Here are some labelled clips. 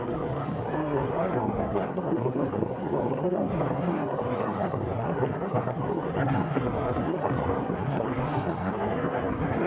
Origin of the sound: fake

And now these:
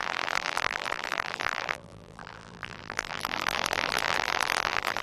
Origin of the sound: fake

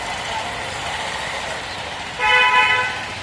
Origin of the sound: real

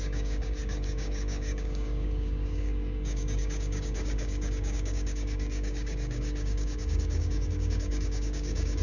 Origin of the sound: fake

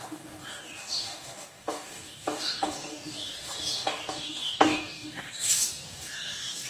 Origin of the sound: fake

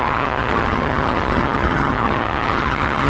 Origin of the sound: fake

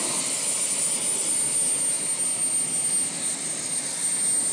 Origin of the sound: real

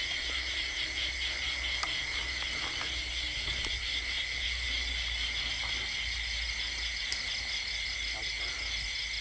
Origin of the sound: real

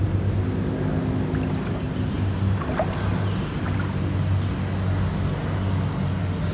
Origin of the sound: real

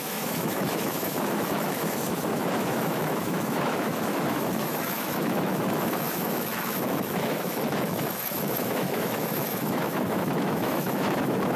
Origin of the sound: fake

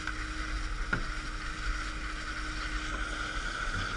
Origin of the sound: real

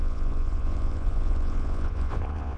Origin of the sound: fake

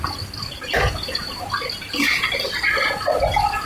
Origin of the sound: real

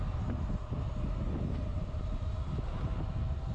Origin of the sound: real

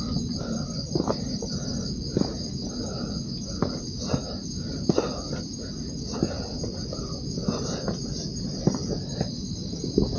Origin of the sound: real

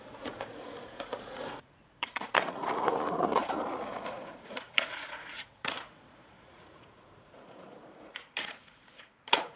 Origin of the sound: fake